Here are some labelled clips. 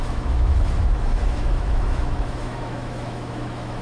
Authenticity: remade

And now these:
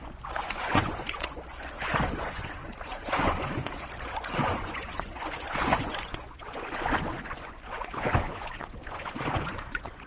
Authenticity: remade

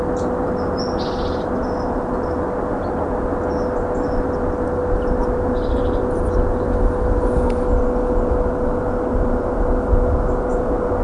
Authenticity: recorded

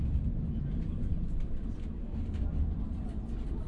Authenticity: recorded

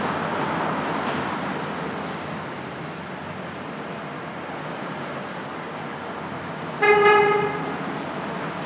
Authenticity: recorded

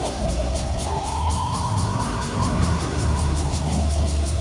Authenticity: remade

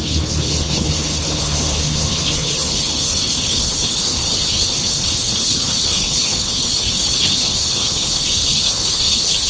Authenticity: remade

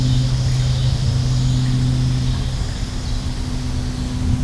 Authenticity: recorded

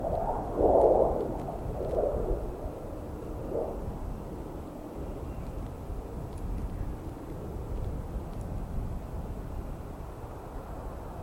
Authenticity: recorded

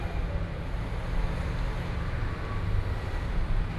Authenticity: recorded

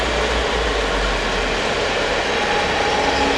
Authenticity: recorded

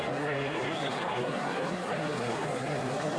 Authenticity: remade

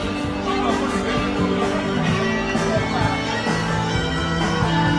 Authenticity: recorded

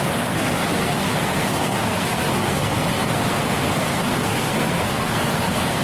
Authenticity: remade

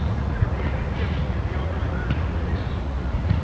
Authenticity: remade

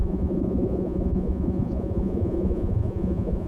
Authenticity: remade